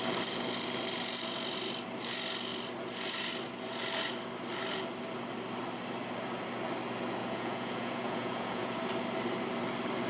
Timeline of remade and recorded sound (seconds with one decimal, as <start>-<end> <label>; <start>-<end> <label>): 0.0-7.2 recorded; 7.2-8.9 remade; 8.9-10.1 recorded